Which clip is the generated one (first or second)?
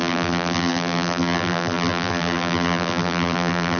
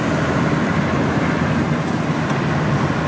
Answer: first